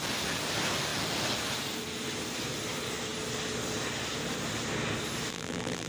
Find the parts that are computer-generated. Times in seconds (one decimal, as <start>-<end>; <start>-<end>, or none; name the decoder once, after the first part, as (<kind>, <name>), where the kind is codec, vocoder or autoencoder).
5.3-5.9 (vocoder, BigVGAN v2)